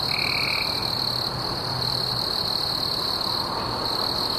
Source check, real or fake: real